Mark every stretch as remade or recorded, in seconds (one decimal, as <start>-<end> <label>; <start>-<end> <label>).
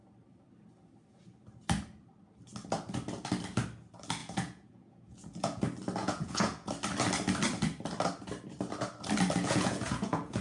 0.0-4.2 recorded; 4.2-5.6 remade; 5.6-6.0 recorded; 6.0-6.7 remade; 6.7-9.4 recorded; 9.4-10.4 remade